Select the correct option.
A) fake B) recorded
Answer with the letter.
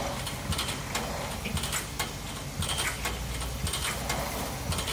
B